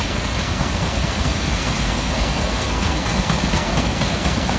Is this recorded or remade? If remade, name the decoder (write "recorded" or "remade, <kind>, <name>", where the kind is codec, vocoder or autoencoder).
remade, codec, SNAC